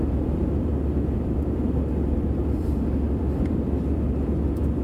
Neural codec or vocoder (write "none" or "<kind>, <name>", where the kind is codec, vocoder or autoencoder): vocoder, BigVGAN v2